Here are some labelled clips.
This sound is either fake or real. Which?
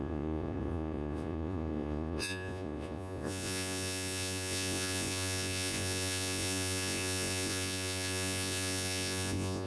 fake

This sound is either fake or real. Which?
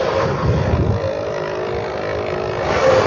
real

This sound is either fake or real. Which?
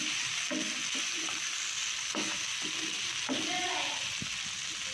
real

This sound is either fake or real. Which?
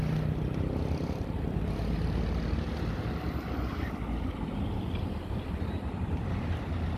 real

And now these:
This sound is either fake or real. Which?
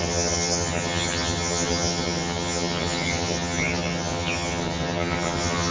fake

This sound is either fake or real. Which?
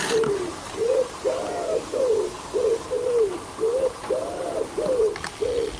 real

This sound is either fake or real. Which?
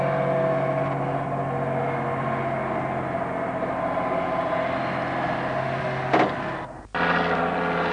real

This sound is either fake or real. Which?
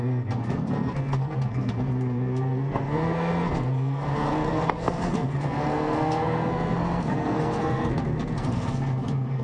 fake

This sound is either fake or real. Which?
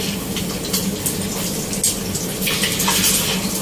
real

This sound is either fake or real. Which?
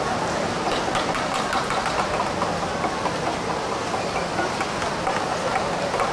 real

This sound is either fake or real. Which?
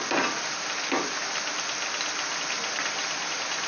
real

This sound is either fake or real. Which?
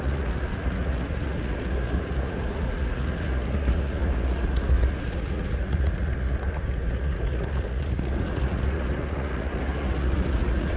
fake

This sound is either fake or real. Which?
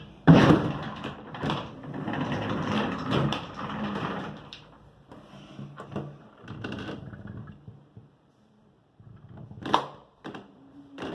fake